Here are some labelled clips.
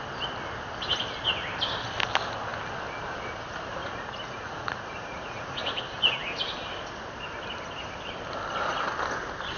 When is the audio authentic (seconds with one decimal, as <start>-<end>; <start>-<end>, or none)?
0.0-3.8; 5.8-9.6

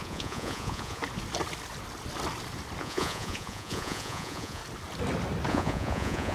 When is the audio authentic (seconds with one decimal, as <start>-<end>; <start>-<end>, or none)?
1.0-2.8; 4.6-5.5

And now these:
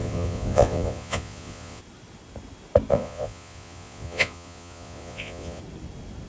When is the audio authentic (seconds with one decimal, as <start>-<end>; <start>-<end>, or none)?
1.8-2.9; 5.6-6.3